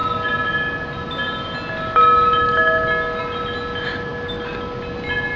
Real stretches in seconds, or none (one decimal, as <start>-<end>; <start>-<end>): 0.0-5.4